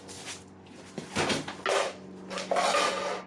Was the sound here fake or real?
real